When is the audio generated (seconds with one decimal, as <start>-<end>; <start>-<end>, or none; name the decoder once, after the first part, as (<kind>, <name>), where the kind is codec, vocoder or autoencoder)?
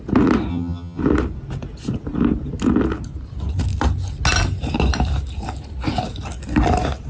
0.5-1.0 (vocoder, HiFi-GAN)